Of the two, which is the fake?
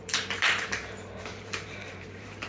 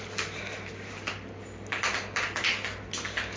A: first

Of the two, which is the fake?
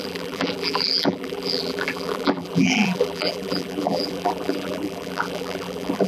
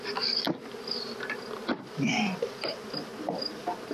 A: first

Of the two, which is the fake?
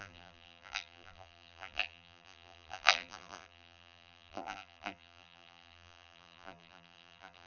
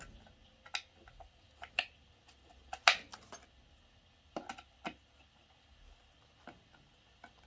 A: first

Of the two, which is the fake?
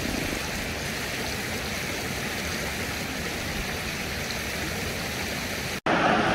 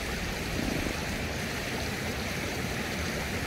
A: second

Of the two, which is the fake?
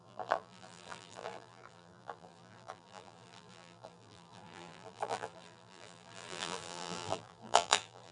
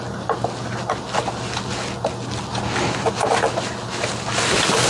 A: first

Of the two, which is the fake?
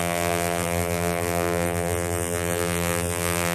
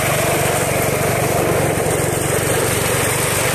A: first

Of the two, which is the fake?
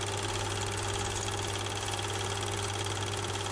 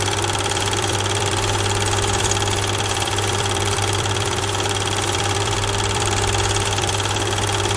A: second